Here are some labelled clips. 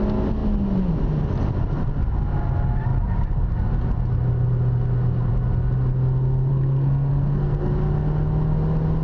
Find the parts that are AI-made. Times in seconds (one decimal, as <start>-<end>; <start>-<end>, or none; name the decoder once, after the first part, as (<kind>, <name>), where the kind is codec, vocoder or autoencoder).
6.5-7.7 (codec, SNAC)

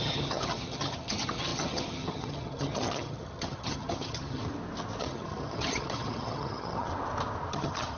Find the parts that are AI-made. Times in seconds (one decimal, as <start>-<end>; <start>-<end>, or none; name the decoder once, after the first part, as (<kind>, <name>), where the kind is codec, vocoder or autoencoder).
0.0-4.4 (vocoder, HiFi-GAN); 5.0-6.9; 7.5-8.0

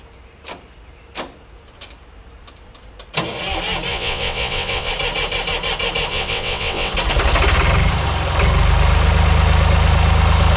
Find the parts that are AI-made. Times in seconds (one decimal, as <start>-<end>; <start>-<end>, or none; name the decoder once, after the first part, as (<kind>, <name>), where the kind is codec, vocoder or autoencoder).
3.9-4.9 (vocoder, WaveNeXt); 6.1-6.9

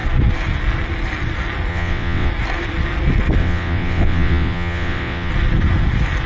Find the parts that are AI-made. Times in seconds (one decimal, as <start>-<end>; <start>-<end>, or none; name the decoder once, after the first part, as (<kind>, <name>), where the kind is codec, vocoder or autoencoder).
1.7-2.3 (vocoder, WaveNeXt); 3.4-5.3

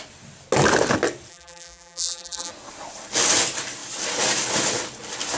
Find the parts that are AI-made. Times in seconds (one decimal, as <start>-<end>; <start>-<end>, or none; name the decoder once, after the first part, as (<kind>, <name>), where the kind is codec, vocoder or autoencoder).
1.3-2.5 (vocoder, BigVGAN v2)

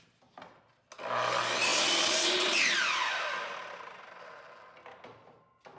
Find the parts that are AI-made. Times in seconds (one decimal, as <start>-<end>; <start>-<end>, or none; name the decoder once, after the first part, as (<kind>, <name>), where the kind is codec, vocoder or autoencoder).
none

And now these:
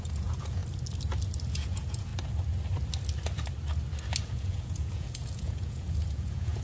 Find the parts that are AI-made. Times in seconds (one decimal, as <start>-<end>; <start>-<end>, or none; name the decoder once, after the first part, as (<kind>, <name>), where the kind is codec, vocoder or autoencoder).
0.0-0.6 (vocoder, Vocos); 1.5-2.1; 4.2-6.6